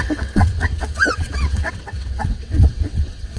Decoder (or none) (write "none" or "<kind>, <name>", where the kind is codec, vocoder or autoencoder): vocoder, WaveNeXt